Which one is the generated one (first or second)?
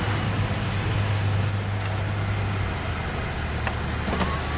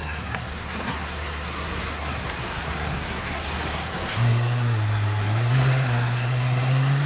second